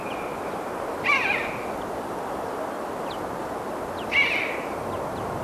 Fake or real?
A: real